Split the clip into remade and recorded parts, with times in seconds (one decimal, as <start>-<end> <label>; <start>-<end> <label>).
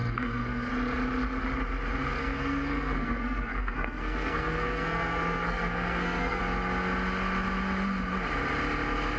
0.0-0.7 remade; 0.7-2.2 recorded; 2.2-6.4 remade; 6.4-9.2 recorded